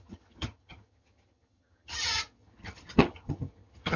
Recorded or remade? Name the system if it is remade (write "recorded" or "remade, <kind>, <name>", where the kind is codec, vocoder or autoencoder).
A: remade, vocoder, HiFi-GAN